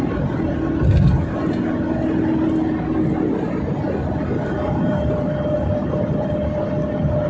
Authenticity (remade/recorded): recorded